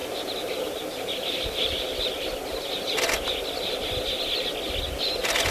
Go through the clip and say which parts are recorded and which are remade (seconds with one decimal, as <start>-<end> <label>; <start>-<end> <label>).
0.0-2.0 remade; 2.0-5.5 recorded